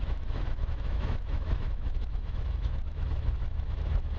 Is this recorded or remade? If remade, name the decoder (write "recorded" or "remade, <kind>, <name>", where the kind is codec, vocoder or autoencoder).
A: remade, autoencoder, DAC-VAE